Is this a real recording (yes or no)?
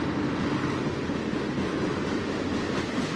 yes